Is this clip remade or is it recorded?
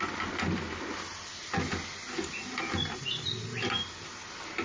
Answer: recorded